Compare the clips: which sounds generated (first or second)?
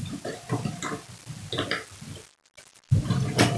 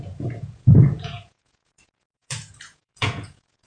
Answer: second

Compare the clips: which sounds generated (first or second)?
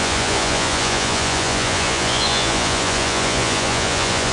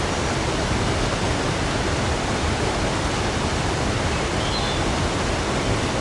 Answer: first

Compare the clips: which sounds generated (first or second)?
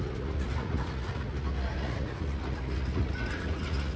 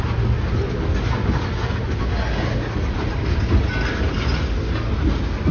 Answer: first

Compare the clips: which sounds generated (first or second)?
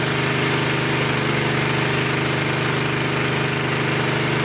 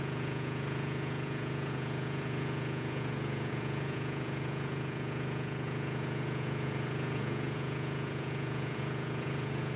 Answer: second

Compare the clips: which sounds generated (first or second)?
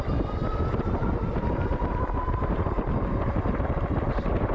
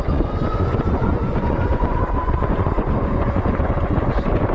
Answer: second